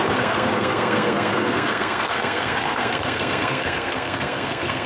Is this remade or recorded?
remade